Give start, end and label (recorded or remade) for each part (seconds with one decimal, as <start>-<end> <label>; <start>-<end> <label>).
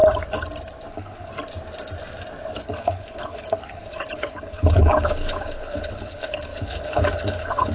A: 0.0-0.9 recorded; 0.9-1.3 remade; 1.3-2.6 recorded; 2.6-7.7 remade